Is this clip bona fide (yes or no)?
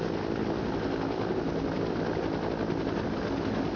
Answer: yes